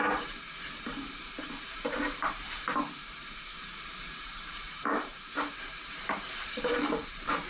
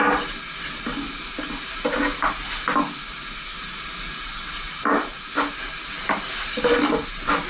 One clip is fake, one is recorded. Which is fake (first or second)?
first